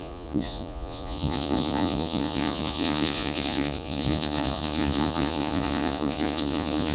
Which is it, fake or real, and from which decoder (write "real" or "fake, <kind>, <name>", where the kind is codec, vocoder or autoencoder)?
fake, vocoder, Vocos